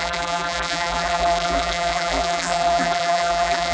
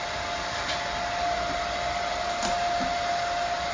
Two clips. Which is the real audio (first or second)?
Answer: second